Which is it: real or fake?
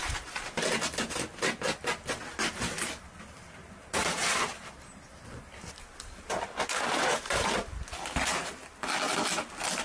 real